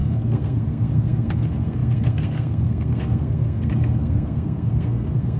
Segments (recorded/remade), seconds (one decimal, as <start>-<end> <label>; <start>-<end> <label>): 0.0-5.4 remade